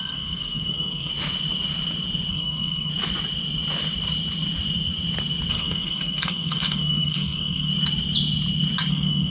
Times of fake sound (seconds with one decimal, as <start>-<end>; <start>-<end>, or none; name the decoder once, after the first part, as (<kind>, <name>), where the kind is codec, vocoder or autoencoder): 0.0-1.1 (codec, SNAC); 2.3-2.9; 5.5-7.7; 8.9-9.3